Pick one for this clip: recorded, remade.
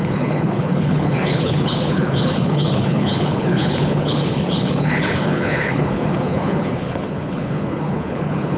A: remade